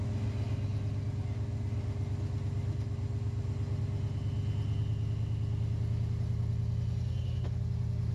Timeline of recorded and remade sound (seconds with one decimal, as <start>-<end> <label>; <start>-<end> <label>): 0.0-8.1 recorded